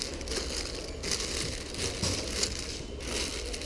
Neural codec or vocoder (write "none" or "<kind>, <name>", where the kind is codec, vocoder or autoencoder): none